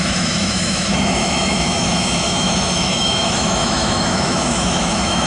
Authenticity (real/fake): fake